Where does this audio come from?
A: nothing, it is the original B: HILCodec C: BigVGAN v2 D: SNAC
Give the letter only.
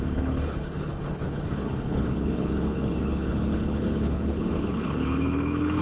B